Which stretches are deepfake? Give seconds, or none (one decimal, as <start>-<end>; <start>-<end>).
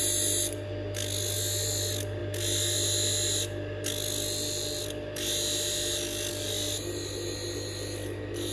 none